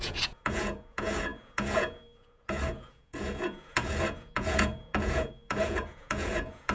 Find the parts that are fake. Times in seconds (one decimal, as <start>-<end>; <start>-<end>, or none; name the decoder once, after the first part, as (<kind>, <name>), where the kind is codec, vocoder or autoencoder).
0.0-6.7 (vocoder, Vocos)